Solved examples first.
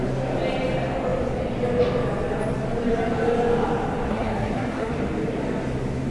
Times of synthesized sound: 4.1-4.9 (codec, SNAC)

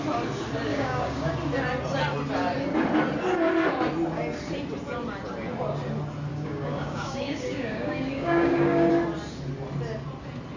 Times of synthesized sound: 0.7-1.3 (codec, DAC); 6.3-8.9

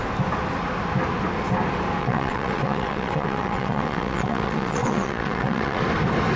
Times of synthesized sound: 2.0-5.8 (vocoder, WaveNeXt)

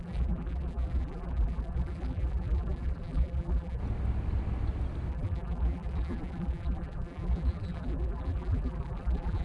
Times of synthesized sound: 0.0-3.8 (vocoder, BigVGAN v2); 5.1-9.4